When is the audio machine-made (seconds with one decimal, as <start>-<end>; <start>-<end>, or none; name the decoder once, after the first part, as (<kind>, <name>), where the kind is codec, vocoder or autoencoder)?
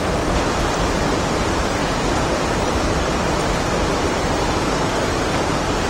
1.8-2.4 (vocoder, Vocos)